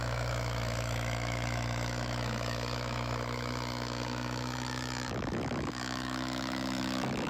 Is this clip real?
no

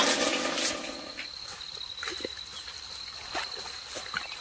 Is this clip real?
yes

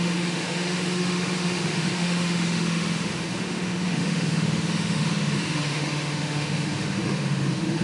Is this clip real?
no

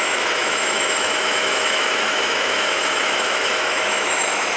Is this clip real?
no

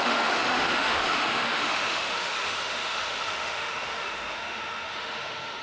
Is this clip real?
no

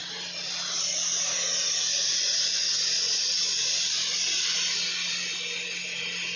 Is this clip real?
yes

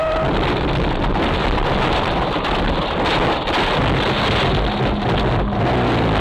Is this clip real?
yes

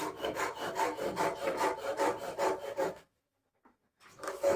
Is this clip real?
no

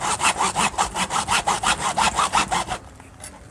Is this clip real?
yes